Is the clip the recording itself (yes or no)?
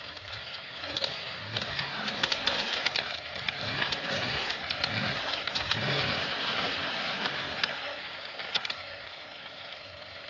no